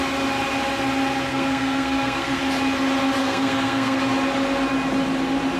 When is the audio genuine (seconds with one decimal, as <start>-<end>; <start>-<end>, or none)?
0.0-1.3; 2.4-3.2; 4.0-5.6